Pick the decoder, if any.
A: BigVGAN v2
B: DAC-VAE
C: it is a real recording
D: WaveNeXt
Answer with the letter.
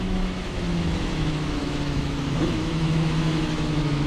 B